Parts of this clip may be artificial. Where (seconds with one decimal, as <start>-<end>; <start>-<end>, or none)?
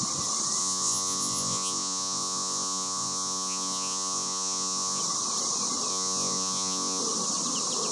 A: 0.6-5.0; 5.9-7.0